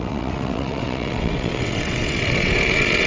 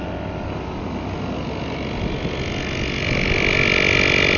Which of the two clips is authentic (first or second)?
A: second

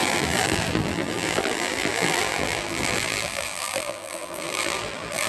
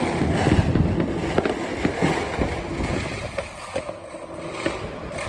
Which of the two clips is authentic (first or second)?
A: second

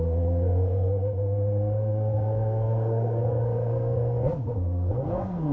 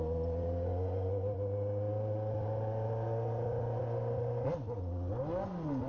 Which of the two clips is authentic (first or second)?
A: second